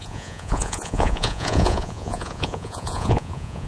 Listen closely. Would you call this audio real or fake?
fake